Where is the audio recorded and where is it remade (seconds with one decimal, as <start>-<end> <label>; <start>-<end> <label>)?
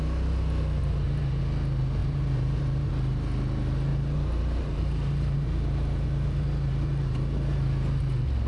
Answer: 0.0-0.8 recorded; 0.8-1.4 remade; 1.4-2.0 recorded; 2.0-2.9 remade; 2.9-3.9 recorded; 3.9-7.9 remade; 7.9-8.5 recorded